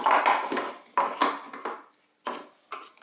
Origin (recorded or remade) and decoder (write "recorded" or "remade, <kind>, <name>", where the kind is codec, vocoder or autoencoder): recorded